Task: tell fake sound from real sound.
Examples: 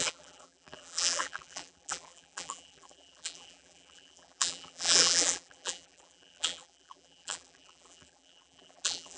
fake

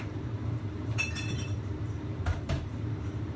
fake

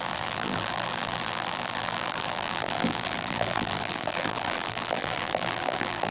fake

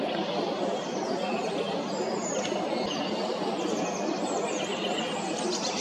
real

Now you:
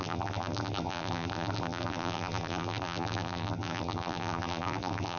fake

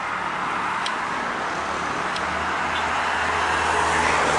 real